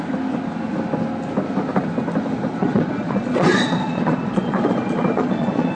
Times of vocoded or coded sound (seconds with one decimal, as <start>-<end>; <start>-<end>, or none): 2.6-5.7